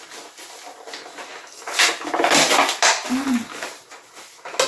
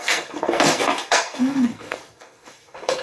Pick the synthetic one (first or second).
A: second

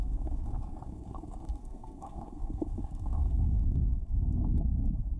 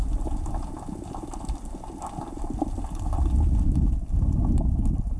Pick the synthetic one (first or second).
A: first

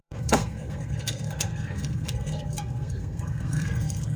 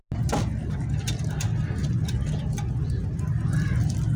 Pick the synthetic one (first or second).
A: first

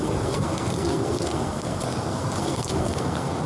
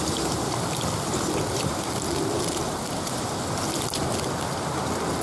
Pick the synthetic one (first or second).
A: first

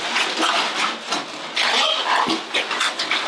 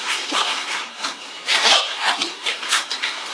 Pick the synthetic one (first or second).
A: second